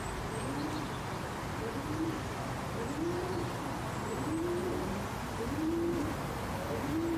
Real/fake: real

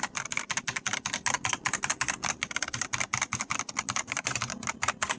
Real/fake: real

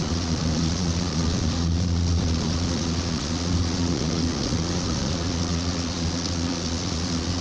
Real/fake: fake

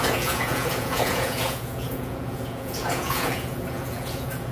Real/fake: fake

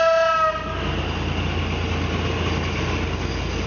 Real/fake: real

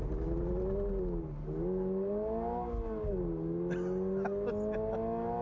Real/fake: real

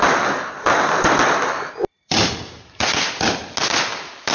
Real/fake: real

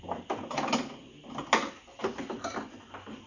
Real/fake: real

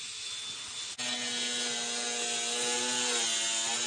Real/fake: real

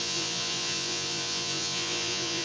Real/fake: fake